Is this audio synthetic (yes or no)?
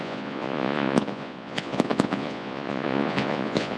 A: yes